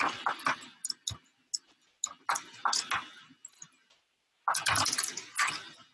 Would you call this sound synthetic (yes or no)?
no